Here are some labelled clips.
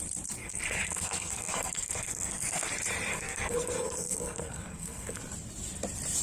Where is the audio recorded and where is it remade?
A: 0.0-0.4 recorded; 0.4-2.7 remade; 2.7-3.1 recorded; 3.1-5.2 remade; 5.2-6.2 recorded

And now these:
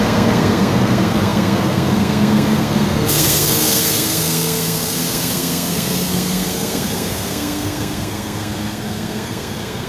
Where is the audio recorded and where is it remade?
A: 0.0-9.9 remade